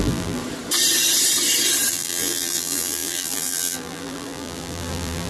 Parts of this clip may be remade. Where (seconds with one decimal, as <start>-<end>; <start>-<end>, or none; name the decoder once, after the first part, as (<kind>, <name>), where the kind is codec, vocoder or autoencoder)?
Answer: 0.0-0.4 (vocoder, BigVGAN v2); 1.9-5.3